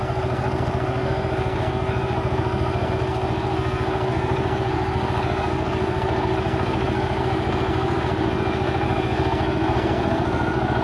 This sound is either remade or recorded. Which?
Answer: remade